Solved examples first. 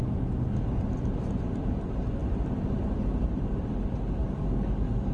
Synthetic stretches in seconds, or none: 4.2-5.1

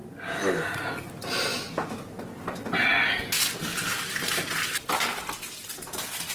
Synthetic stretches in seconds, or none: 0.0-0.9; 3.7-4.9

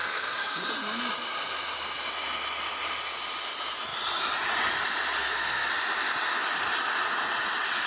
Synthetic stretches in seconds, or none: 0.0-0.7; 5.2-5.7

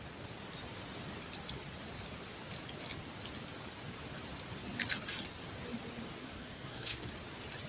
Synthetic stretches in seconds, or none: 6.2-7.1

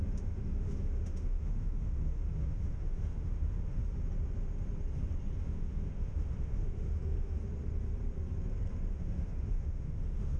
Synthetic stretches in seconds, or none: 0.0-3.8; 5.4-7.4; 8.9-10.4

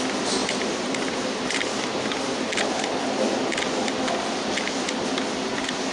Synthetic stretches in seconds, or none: 0.4-2.6

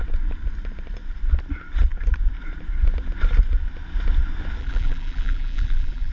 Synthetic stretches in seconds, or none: 4.6-6.1

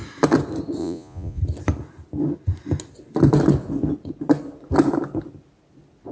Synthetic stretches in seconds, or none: 0.8-1.4